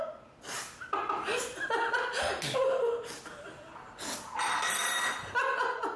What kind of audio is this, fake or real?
real